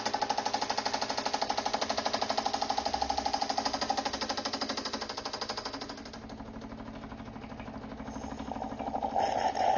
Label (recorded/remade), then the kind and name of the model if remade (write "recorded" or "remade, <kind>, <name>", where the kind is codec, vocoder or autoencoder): recorded